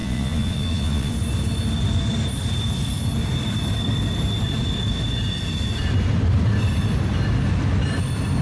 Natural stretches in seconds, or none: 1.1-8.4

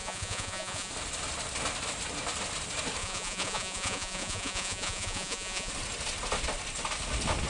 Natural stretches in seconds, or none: 0.9-3.0; 5.7-7.5

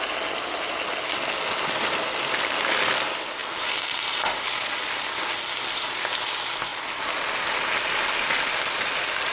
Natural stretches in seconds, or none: 0.0-9.3

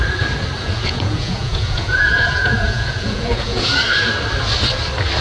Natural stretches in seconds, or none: 0.0-0.6; 3.7-5.2